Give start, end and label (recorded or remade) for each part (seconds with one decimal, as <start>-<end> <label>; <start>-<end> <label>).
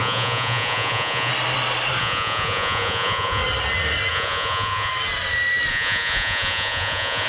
0.0-1.3 remade; 1.3-2.0 recorded; 2.0-3.4 remade; 3.4-4.1 recorded; 4.1-4.9 remade; 4.9-5.7 recorded; 5.7-7.3 remade